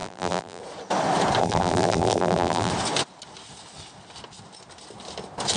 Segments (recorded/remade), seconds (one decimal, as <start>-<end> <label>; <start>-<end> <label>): 0.0-0.6 remade; 0.6-1.4 recorded; 1.4-2.7 remade; 2.7-5.6 recorded